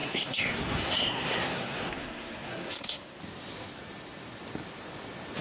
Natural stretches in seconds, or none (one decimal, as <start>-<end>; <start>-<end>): 3.2-5.4